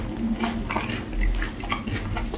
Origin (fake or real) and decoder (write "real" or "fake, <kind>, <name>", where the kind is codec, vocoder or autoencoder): real